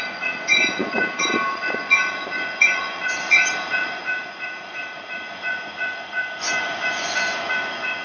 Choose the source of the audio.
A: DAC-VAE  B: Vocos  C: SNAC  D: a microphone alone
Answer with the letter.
B